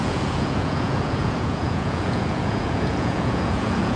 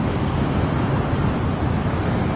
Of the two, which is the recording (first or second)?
second